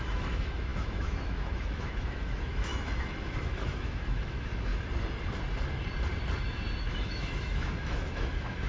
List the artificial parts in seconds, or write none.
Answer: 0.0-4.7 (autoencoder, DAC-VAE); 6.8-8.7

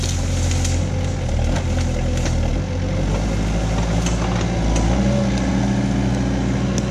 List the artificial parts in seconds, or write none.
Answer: none

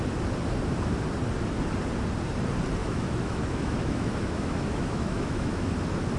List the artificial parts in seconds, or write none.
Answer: 2.8-5.7 (autoencoder, DAC-VAE)

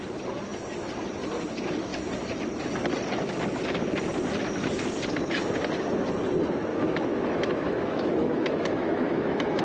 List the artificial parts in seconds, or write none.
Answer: 6.7-9.6 (autoencoder, DAC-VAE)

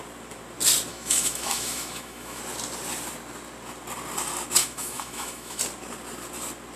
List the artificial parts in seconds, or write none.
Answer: 0.9-2.4 (autoencoder, DAC-VAE); 4.6-5.6

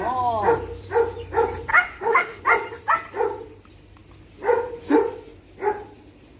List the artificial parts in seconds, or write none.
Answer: 1.7-2.4 (autoencoder, DAC-VAE)

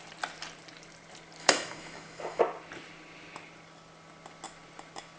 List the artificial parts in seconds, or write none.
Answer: 1.4-2.4 (autoencoder, DAC-VAE)

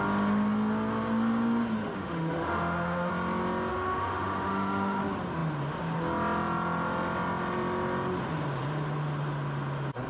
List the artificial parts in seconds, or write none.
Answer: 1.8-3.1 (autoencoder, DAC-VAE); 3.7-5.0